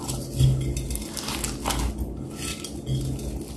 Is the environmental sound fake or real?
real